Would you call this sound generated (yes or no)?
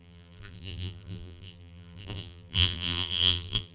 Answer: yes